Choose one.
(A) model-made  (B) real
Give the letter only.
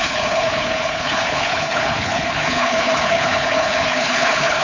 A